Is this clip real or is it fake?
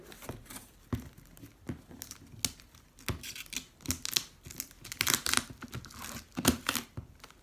real